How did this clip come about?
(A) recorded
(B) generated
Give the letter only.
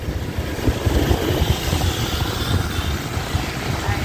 A